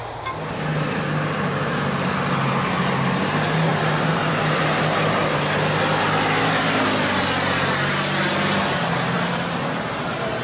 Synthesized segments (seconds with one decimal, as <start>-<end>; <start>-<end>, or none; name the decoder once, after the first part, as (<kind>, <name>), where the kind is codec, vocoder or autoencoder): 3.7-4.3 (vocoder, BigVGAN v2)